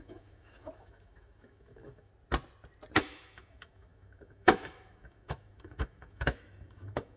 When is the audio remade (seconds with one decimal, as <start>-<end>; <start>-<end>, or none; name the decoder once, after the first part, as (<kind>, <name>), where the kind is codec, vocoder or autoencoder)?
0.0-2.1 (autoencoder, DAC-VAE); 3.0-7.2